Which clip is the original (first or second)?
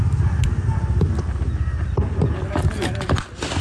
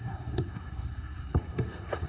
first